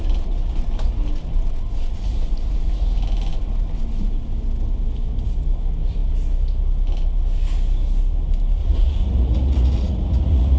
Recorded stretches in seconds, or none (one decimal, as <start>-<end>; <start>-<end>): 0.0-8.6